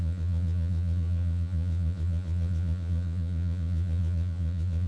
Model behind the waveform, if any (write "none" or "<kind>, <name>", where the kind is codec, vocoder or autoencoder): vocoder, Vocos